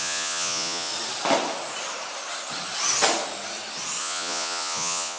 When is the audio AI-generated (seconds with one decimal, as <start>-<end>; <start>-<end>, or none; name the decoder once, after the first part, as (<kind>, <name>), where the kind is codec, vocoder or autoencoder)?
0.0-0.9 (vocoder, Vocos); 4.0-5.2